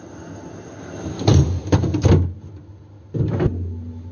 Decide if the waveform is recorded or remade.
recorded